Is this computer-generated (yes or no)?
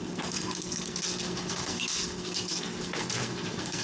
yes